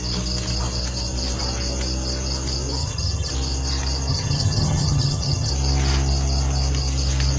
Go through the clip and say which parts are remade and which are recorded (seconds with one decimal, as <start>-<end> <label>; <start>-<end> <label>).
0.0-2.8 recorded; 2.8-3.3 remade; 3.3-4.1 recorded; 4.1-5.5 remade; 5.5-7.4 recorded

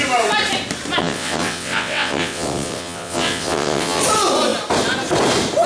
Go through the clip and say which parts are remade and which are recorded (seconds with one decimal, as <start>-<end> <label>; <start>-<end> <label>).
0.0-1.0 recorded; 1.0-4.0 remade; 4.0-5.7 recorded

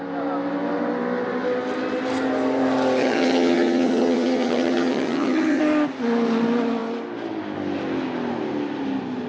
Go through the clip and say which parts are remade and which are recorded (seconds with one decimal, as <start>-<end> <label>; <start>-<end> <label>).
0.0-3.0 recorded; 3.0-5.6 remade; 5.6-9.3 recorded

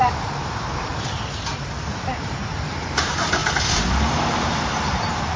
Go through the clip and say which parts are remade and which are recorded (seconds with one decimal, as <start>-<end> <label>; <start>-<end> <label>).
0.0-0.9 remade; 0.9-2.2 recorded; 2.2-3.4 remade; 3.4-4.1 recorded; 4.1-5.4 remade